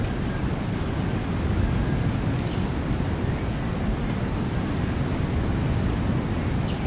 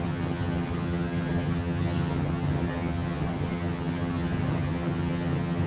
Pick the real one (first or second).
first